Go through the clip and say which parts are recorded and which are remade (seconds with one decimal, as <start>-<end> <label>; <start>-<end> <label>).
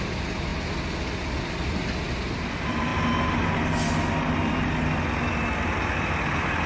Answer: 0.0-6.7 recorded